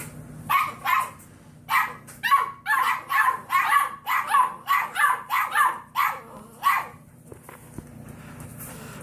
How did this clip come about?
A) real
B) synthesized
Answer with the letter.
A